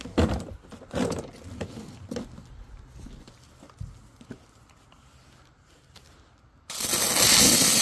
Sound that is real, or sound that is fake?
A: real